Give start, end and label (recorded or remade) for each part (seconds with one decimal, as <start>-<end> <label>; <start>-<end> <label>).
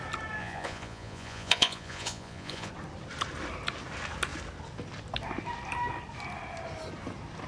0.0-0.4 recorded; 0.4-2.7 remade; 2.7-7.5 recorded